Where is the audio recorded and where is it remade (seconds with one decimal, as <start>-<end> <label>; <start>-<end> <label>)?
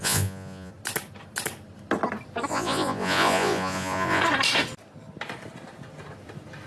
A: 0.0-0.7 remade; 0.7-2.5 recorded; 2.5-4.2 remade; 4.2-6.7 recorded